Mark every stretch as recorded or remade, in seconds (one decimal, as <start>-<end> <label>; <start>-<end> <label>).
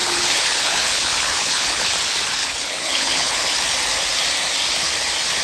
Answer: 0.0-1.9 remade; 1.9-2.4 recorded; 2.4-3.5 remade; 3.5-5.4 recorded